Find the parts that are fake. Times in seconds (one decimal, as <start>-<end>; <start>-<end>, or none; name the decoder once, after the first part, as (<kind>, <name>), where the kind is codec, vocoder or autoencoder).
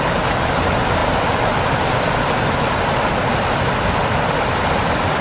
none